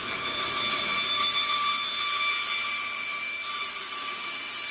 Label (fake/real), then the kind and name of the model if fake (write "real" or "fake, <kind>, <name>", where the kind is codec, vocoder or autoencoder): real